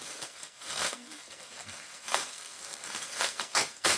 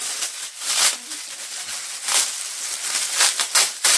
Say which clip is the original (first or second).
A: second